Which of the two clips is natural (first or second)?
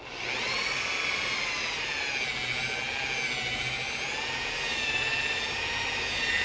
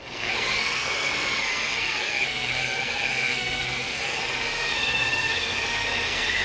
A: first